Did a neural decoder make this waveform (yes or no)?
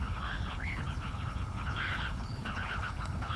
yes